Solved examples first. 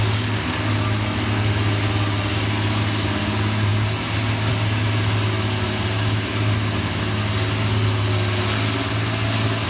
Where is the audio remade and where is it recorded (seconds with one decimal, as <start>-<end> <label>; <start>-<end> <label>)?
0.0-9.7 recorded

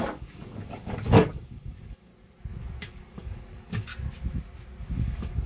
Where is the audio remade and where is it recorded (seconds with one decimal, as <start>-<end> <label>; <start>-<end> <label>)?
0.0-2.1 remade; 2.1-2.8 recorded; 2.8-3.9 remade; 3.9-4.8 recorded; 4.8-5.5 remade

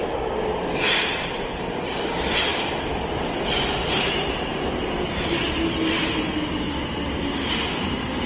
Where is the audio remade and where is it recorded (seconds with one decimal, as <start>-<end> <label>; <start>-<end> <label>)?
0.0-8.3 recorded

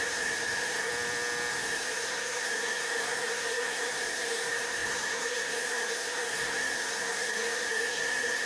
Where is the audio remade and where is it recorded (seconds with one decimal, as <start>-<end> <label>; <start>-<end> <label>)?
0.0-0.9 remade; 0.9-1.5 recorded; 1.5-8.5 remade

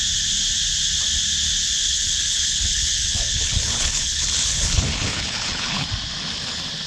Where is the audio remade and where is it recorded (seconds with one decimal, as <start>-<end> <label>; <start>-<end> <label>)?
0.0-1.8 recorded; 1.8-5.9 remade; 5.9-6.9 recorded

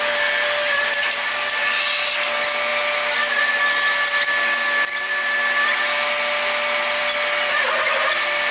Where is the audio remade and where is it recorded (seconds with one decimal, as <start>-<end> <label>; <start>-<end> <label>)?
0.0-8.5 recorded

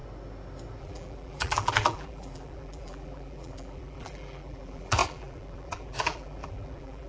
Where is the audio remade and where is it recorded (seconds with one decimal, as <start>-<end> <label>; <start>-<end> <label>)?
0.0-0.8 recorded; 0.8-7.1 remade